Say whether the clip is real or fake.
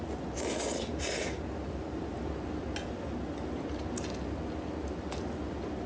real